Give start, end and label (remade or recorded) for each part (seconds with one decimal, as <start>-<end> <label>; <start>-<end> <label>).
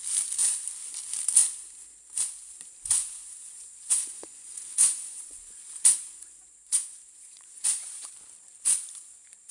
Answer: 0.0-3.0 recorded; 3.0-8.1 remade; 8.1-9.5 recorded